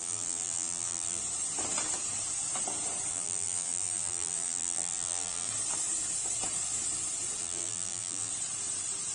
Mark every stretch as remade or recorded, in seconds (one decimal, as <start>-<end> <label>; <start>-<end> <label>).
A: 0.0-1.2 remade; 1.2-3.1 recorded; 3.1-5.5 remade; 5.5-7.4 recorded; 7.4-8.3 remade; 8.3-9.1 recorded